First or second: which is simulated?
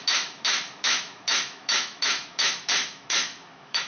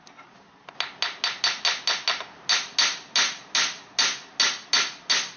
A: first